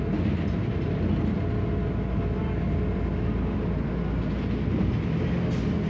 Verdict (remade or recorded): recorded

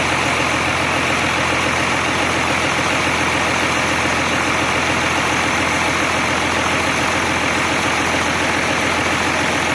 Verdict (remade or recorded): recorded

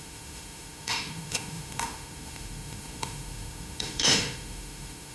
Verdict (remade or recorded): remade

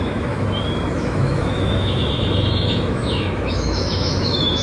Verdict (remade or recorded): remade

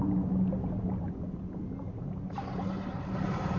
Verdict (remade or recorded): recorded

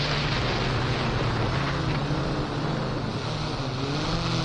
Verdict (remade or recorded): recorded